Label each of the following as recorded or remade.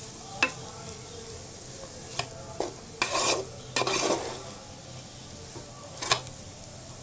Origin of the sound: recorded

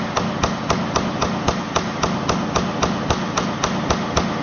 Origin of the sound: recorded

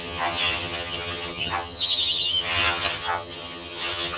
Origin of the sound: remade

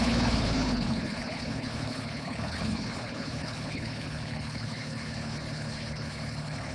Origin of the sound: remade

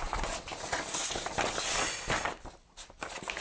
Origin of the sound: recorded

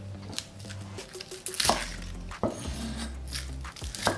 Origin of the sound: recorded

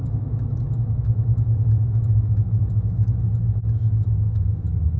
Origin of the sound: remade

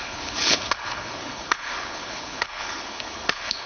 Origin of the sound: remade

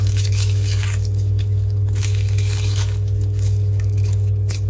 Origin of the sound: remade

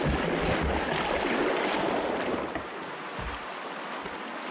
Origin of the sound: recorded